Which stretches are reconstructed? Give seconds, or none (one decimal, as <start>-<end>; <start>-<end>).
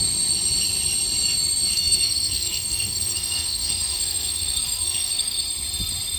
1.7-5.4